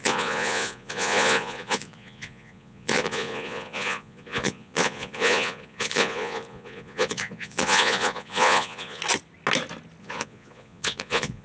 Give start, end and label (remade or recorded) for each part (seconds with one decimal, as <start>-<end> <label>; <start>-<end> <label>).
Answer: 0.0-9.0 remade; 9.0-10.0 recorded; 10.0-11.4 remade